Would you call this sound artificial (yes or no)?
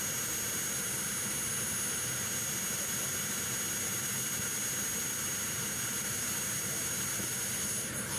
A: no